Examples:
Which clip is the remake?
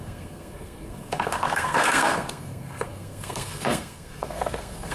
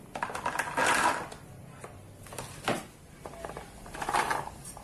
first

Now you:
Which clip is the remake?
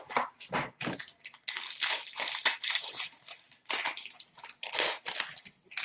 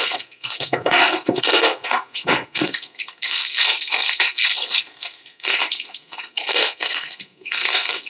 second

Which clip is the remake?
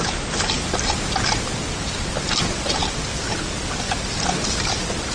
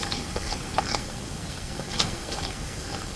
second